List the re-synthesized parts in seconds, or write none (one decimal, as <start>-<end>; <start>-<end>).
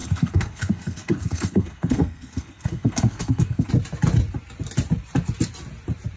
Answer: 0.0-3.7